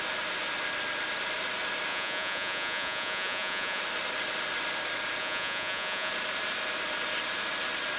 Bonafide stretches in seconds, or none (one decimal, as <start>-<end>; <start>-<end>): 0.0-1.9; 3.8-5.2; 6.1-8.0